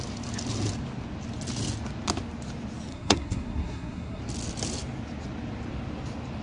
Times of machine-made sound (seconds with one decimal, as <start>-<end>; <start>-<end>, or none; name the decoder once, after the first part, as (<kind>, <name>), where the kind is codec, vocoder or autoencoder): 2.9-4.2 (codec, SNAC)